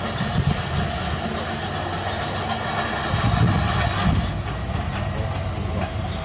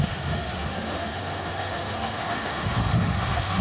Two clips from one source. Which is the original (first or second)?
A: first